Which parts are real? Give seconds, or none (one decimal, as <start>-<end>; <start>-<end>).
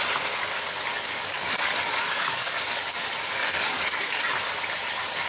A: 0.0-0.9; 2.8-3.4; 4.2-5.3